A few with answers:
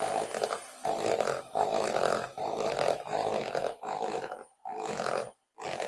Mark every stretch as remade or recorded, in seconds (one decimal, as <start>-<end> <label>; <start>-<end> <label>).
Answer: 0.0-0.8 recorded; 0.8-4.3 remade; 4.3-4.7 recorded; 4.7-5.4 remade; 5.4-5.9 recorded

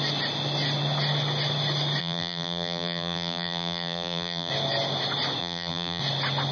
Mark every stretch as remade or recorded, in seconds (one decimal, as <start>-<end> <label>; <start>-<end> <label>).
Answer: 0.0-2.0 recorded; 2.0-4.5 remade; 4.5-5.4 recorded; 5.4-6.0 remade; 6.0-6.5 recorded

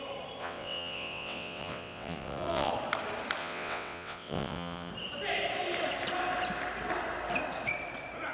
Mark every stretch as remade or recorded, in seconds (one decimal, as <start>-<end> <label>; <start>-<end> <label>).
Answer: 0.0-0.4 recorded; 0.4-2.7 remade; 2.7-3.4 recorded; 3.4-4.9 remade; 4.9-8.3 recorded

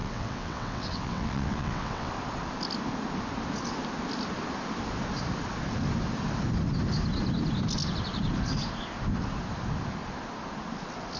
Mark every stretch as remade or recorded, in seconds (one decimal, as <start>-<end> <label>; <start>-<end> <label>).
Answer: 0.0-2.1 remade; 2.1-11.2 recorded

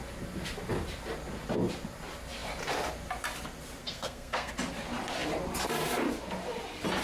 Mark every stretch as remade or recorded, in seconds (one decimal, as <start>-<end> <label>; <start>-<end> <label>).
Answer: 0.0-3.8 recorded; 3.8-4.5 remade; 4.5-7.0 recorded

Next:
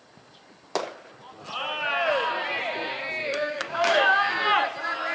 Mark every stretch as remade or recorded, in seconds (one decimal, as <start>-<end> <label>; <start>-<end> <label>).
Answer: 0.0-3.2 recorded; 3.2-4.3 remade; 4.3-5.1 recorded